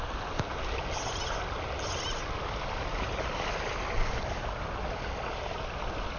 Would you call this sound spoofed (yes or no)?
no